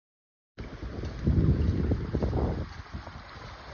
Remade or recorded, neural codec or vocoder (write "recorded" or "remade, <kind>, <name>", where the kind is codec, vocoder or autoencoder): recorded